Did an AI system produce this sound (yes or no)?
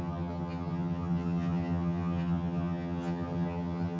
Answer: yes